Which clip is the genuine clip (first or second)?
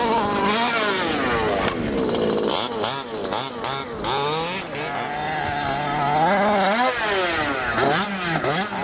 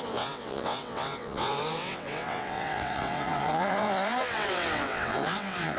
first